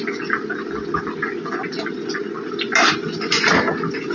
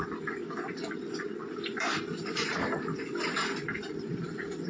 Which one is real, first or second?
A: first